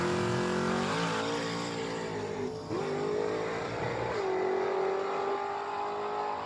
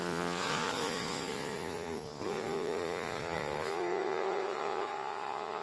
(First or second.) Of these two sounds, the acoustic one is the first